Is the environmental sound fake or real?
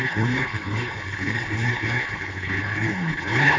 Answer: fake